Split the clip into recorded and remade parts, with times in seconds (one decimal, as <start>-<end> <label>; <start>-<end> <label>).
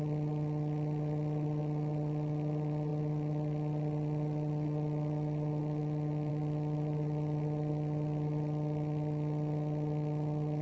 0.0-10.6 recorded